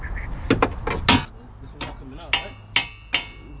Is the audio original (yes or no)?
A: yes